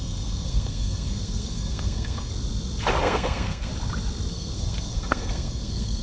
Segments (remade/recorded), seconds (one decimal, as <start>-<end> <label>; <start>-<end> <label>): 0.0-2.3 remade; 2.3-3.0 recorded; 3.0-3.7 remade; 3.7-4.3 recorded; 4.3-6.0 remade